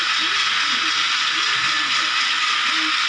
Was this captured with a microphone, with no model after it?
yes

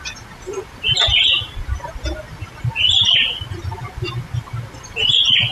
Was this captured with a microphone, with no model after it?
yes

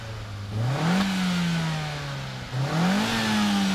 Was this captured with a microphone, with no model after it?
yes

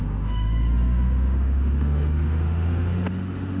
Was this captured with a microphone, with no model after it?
no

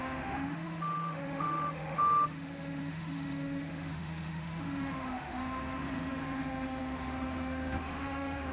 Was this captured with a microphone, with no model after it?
no